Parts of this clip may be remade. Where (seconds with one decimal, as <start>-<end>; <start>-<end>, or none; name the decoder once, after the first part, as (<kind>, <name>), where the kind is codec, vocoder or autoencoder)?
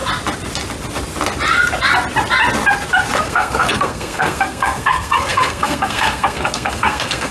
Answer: 3.2-7.3 (codec, SNAC)